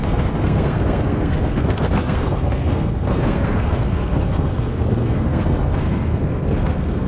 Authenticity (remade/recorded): remade